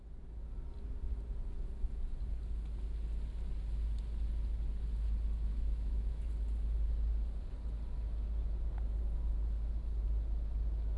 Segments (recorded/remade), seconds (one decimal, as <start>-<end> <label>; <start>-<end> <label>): 0.0-5.5 recorded; 5.5-6.3 remade; 6.3-11.0 recorded